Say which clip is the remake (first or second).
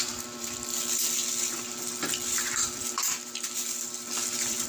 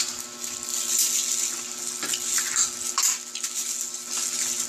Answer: first